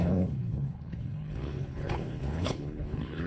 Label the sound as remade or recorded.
remade